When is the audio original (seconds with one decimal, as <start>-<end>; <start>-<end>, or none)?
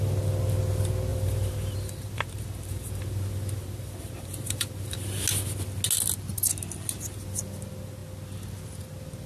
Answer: 0.0-1.1; 5.2-9.3